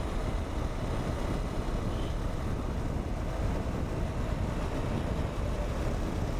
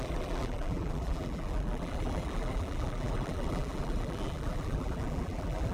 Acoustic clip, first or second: first